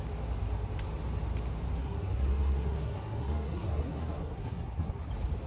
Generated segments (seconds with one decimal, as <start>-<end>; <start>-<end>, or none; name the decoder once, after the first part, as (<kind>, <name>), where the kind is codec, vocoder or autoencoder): 1.8-5.1 (codec, SNAC)

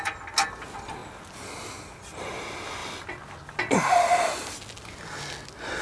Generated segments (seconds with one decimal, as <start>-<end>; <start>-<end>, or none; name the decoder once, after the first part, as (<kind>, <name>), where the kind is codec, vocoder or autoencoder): none